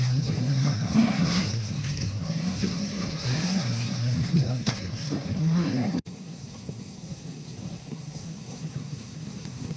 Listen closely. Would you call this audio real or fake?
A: fake